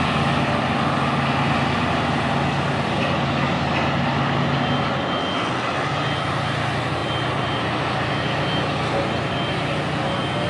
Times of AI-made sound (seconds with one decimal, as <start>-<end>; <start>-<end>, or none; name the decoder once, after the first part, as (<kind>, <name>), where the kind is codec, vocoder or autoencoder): none